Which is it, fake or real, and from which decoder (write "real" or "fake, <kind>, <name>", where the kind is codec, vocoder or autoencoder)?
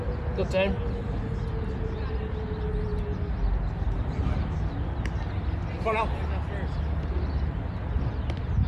real